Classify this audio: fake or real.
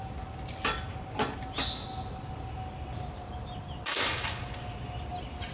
real